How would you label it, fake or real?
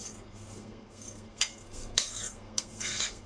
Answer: fake